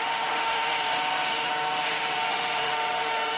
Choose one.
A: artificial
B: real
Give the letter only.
A